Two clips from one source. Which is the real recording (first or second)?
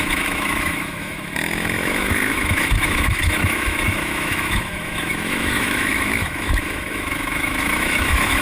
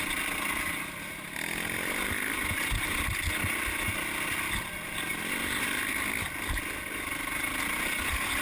second